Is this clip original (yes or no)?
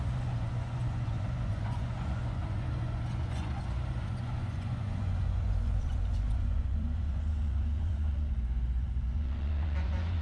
no